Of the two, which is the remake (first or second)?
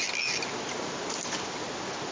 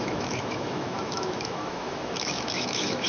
second